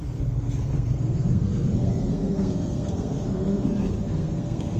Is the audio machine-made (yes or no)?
yes